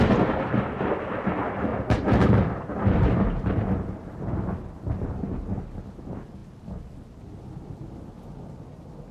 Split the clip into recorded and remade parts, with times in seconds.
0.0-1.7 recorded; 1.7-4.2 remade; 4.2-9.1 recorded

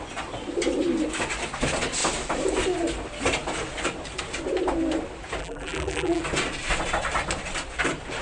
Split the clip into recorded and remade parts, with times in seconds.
0.0-5.4 recorded; 5.4-6.2 remade; 6.2-8.2 recorded

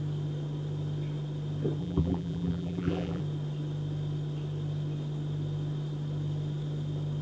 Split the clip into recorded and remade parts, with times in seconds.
0.0-1.8 recorded; 1.8-3.2 remade; 3.2-7.2 recorded

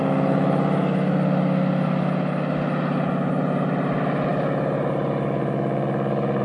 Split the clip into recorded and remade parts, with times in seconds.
0.0-6.4 recorded